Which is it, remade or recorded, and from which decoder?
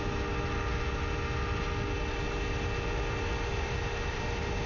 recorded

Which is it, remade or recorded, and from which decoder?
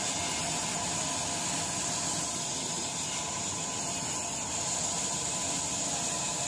recorded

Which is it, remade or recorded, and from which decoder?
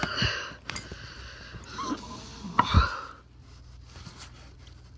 recorded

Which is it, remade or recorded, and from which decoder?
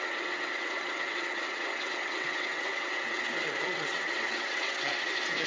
remade, vocoder, WaveNeXt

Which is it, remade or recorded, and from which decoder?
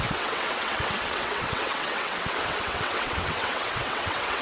remade, vocoder, WaveNeXt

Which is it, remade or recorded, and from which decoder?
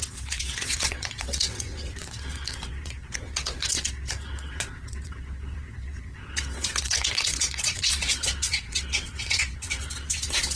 remade, vocoder, WaveNeXt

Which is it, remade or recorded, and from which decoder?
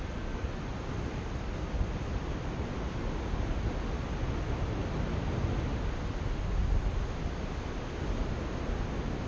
recorded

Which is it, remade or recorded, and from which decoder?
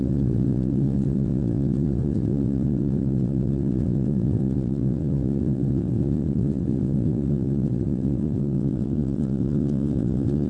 remade, vocoder, WaveNeXt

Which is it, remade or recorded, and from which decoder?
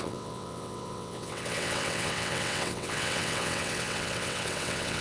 remade, vocoder, WaveNeXt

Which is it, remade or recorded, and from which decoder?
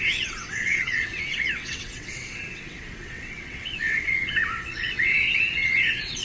remade, vocoder, WaveNeXt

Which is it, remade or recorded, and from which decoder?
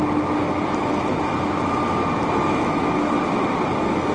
recorded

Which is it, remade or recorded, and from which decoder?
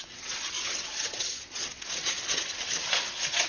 remade, vocoder, WaveNeXt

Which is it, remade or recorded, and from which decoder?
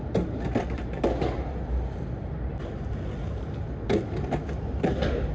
recorded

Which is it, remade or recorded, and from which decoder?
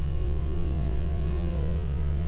remade, vocoder, WaveNeXt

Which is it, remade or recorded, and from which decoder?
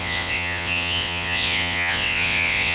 remade, vocoder, WaveNeXt